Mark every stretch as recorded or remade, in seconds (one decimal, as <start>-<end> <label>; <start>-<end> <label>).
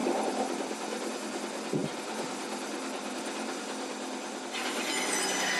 0.0-1.1 remade; 1.1-1.8 recorded; 1.8-4.9 remade; 4.9-5.6 recorded